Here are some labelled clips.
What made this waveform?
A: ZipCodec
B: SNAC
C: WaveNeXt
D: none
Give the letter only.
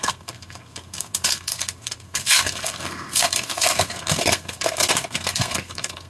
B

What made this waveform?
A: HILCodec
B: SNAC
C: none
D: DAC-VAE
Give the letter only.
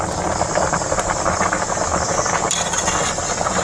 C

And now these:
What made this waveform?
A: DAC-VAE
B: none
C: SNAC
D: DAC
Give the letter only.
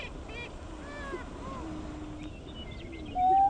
B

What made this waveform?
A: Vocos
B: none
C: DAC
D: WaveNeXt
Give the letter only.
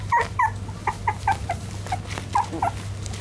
B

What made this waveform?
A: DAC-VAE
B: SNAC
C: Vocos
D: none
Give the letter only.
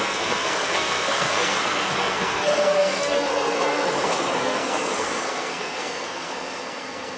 B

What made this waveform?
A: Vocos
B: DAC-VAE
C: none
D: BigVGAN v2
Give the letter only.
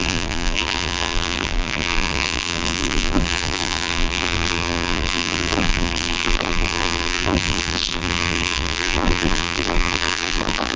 D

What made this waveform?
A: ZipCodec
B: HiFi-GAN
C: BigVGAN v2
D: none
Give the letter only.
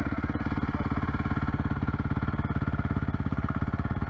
D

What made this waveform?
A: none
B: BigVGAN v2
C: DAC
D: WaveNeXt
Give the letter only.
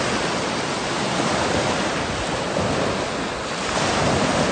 A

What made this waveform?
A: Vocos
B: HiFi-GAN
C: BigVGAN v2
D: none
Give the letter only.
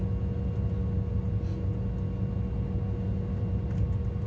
D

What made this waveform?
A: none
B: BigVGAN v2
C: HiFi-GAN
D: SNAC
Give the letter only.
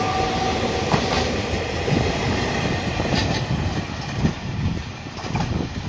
B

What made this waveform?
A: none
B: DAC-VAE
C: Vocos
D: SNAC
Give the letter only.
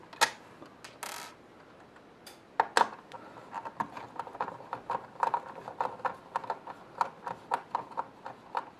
A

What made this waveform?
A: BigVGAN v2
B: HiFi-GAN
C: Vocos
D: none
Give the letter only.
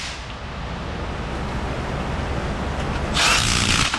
D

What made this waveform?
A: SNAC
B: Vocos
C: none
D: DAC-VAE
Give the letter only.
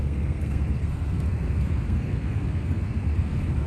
A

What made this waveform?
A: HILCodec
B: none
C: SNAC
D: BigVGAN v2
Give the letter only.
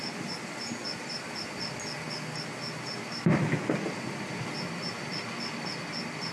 B